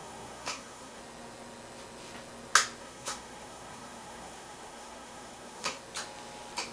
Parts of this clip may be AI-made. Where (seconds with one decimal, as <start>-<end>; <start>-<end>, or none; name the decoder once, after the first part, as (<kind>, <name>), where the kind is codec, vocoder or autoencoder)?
0.0-1.0 (codec, SNAC); 2.8-5.8